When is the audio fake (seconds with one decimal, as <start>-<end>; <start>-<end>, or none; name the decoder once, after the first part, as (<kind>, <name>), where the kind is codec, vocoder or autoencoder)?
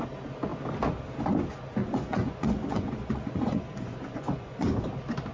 1.8-4.7 (vocoder, Vocos)